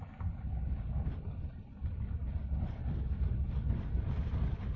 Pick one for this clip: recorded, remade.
recorded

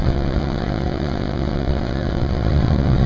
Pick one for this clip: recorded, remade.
remade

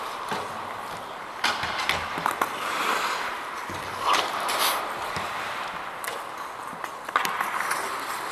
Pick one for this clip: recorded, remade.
recorded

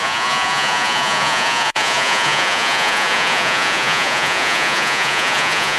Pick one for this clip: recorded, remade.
remade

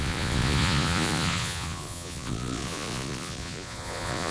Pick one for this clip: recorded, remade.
remade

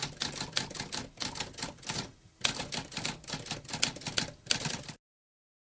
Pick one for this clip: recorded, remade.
recorded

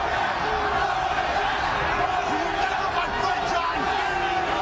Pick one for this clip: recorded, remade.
recorded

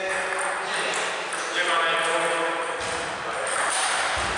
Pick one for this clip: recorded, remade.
recorded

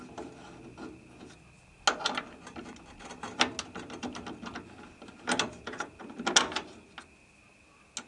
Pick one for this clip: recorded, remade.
recorded